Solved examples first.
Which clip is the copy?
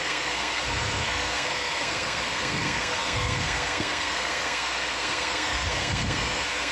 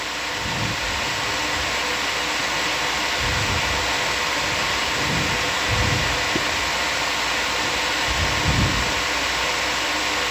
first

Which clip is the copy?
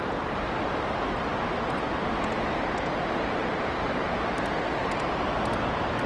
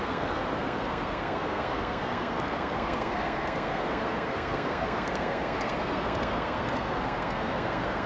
second